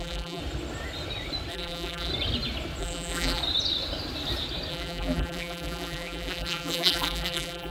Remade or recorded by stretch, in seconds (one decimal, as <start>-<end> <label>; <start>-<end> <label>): 0.0-0.4 remade; 0.4-1.5 recorded; 1.5-2.1 remade; 2.1-2.8 recorded; 2.8-3.4 remade; 3.4-4.7 recorded; 4.7-7.7 remade